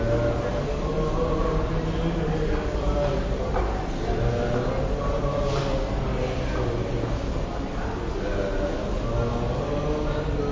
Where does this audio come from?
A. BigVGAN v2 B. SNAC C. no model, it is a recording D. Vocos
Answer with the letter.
C